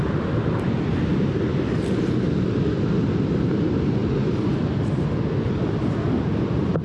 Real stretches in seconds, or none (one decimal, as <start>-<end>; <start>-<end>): 0.0-6.8